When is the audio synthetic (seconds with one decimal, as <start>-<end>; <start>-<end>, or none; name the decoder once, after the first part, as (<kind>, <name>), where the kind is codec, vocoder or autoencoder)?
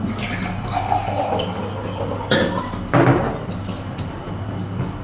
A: none